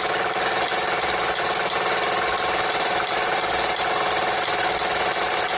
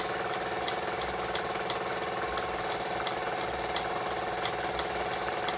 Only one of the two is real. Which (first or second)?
second